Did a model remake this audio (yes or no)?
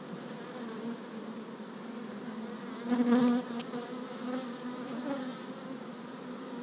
no